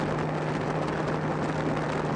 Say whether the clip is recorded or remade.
recorded